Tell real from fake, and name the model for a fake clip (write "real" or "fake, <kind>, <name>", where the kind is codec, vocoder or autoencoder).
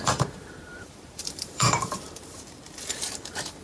fake, vocoder, BigVGAN v2